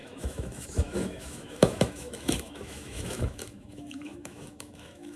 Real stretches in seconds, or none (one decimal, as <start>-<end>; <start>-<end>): none